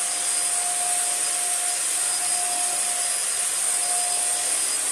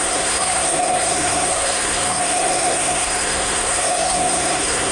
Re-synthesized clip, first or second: second